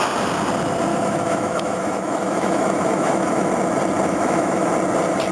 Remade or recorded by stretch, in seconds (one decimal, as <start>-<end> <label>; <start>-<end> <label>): 0.0-0.9 recorded; 0.9-3.5 remade; 3.5-4.1 recorded; 4.1-4.7 remade; 4.7-5.3 recorded